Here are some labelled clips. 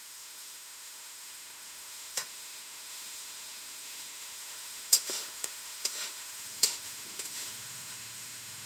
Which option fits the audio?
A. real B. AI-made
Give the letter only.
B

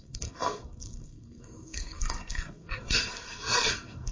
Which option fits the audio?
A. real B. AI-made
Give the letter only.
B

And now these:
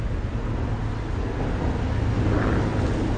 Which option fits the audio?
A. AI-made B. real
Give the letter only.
B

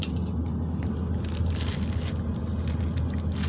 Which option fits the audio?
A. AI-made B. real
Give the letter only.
B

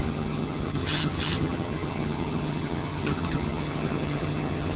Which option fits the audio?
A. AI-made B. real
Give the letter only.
A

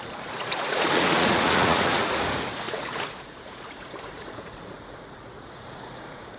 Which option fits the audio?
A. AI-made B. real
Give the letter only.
A